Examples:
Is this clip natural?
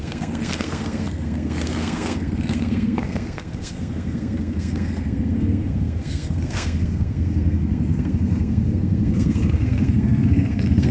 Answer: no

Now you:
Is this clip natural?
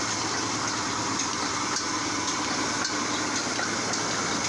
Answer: yes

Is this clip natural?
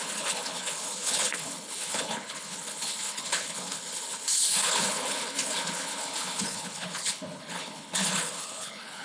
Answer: no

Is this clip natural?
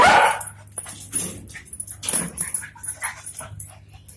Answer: yes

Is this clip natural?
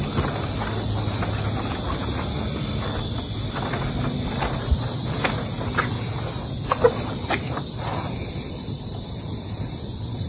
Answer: yes